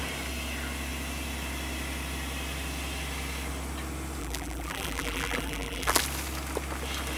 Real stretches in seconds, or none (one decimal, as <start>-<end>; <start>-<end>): 0.0-4.2; 6.0-7.2